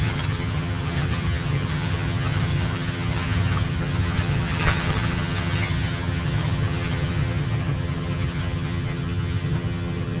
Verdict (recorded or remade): remade